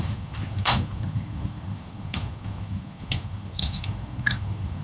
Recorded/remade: remade